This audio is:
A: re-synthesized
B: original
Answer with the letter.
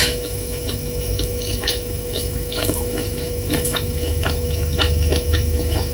A